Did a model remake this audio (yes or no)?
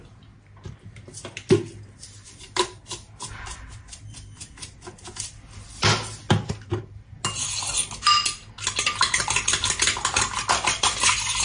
no